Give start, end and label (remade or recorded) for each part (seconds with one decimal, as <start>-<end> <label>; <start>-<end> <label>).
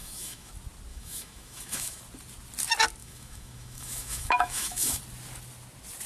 0.0-0.5 remade; 0.5-0.9 recorded; 0.9-2.0 remade; 2.0-3.0 recorded; 3.0-5.0 remade; 5.0-6.1 recorded